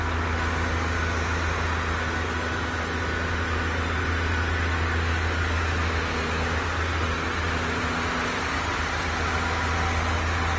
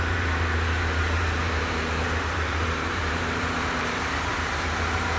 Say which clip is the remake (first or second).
second